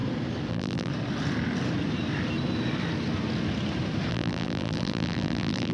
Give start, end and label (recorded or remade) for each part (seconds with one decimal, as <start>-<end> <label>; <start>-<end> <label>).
0.0-0.5 recorded; 0.5-0.9 remade; 0.9-4.1 recorded; 4.1-5.7 remade

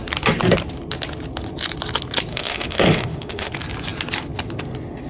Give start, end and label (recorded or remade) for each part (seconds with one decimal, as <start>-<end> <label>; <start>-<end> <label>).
0.0-2.3 recorded; 2.3-3.5 remade; 3.5-5.1 recorded

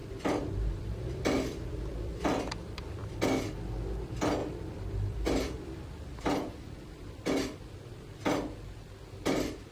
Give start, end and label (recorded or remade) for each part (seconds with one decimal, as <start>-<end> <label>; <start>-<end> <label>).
0.0-3.1 remade; 3.1-4.4 recorded; 4.4-9.7 remade

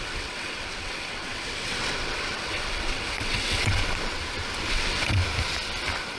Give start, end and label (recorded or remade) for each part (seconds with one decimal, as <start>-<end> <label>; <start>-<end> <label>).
0.0-3.8 remade; 3.8-4.7 recorded; 4.7-5.2 remade; 5.2-6.2 recorded